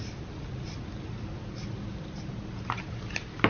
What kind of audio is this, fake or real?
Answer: real